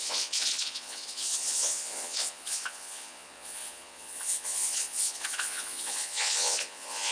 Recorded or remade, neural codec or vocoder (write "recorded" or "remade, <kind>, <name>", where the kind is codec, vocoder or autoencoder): remade, vocoder, Vocos